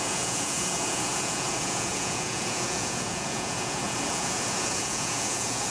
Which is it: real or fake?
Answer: fake